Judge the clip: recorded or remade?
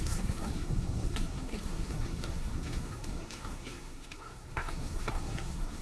remade